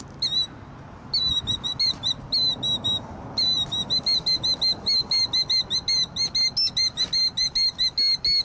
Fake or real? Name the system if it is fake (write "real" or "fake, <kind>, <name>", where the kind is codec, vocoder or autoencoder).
real